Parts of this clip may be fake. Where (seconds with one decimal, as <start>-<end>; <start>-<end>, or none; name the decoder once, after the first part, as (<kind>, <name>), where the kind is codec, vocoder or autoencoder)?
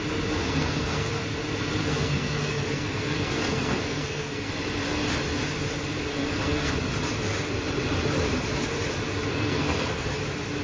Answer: 0.4-1.1 (codec, SNAC); 1.8-4.5; 6.1-6.7; 9.2-10.1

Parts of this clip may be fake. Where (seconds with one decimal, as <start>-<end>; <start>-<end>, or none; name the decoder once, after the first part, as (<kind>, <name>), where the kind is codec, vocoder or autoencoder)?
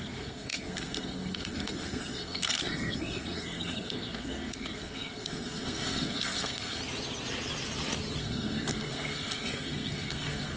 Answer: 0.0-6.8 (codec, SNAC); 8.2-10.6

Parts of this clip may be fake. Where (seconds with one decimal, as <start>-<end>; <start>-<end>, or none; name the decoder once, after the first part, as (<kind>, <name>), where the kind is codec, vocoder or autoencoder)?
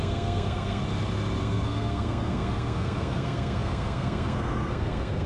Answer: 0.0-0.8 (codec, SNAC); 1.4-5.3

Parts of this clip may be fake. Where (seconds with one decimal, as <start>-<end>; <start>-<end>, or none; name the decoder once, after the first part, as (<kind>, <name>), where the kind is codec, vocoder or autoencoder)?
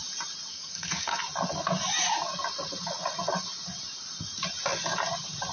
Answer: 0.5-1.2 (codec, SNAC)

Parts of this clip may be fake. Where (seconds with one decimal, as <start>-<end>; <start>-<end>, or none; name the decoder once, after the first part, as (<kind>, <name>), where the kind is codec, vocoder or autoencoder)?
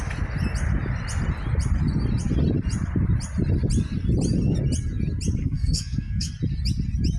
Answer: 5.4-6.3 (codec, SNAC)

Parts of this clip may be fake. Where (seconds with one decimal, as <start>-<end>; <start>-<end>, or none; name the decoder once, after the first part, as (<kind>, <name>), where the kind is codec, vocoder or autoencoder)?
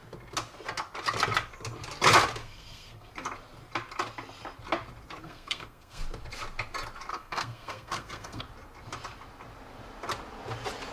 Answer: 2.4-3.1 (codec, SNAC); 5.2-6.0; 7.1-8.4